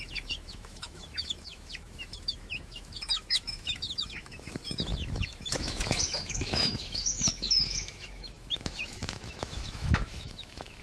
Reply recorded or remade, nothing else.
remade